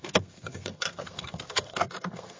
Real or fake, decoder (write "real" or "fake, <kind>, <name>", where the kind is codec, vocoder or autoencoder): fake, codec, SNAC